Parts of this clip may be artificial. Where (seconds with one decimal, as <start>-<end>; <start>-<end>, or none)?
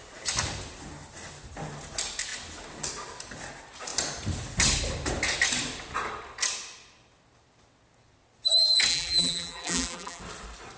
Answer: 8.9-10.2